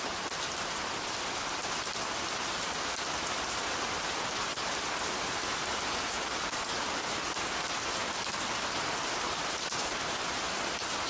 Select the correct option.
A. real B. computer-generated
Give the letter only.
A